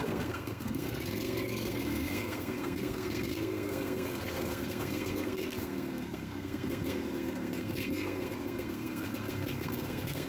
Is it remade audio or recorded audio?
remade